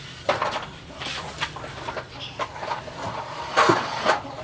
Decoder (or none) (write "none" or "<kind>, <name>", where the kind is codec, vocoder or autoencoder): vocoder, BigVGAN v2